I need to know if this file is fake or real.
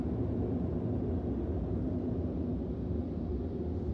real